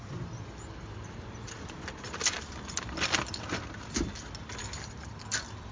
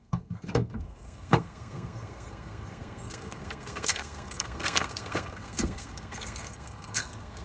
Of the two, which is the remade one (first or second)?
second